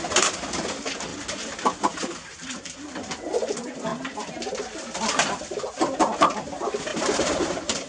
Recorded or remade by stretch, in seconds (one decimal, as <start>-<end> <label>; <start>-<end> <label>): 0.0-1.1 recorded; 1.1-3.1 remade; 3.1-6.9 recorded; 6.9-7.9 remade

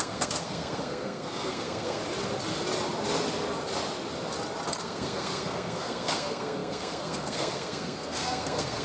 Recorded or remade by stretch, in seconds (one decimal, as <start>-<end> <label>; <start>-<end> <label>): 0.0-2.0 remade; 2.0-4.8 recorded; 4.8-8.8 remade

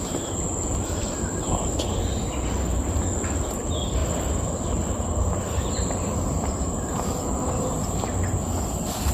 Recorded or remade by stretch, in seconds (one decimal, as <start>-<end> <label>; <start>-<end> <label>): 0.0-9.1 recorded

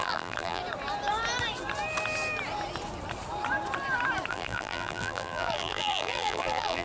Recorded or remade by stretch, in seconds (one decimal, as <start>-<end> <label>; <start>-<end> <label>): 0.0-0.6 remade; 0.6-4.3 recorded; 4.3-6.8 remade

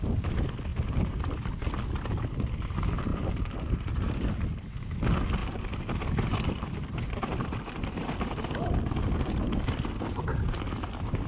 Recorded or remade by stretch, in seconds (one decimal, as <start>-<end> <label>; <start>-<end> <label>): 0.0-0.7 recorded; 0.7-1.2 remade; 1.2-3.1 recorded; 3.1-4.3 remade; 4.3-5.4 recorded; 5.4-8.5 remade; 8.5-11.3 recorded